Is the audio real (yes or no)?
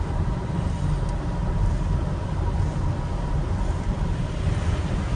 yes